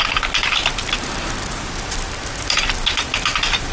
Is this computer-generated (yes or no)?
no